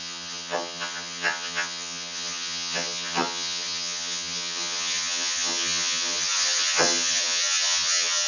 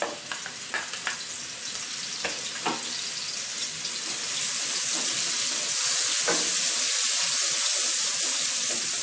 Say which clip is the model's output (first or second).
first